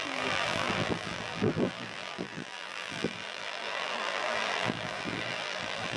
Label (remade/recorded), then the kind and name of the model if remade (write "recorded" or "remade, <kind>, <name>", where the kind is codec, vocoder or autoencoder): remade, vocoder, BigVGAN v2